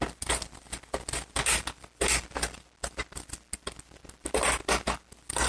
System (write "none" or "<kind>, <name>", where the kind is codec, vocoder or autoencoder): none